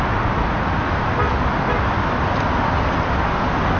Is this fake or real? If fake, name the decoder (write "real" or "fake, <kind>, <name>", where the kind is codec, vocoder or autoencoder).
real